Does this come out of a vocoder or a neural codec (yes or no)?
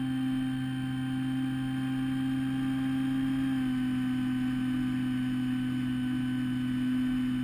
no